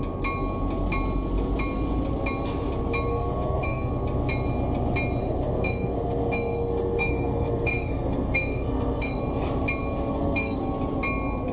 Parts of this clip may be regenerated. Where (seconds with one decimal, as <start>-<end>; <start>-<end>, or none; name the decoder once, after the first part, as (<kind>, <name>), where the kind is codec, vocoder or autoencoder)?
3.1-3.9 (codec, SNAC); 5.2-9.2; 10.1-10.6